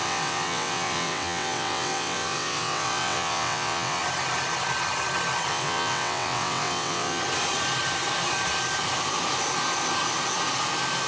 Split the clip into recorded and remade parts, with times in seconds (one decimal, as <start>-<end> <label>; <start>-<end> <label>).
0.0-4.0 remade; 4.0-5.5 recorded; 5.5-7.2 remade; 7.2-11.1 recorded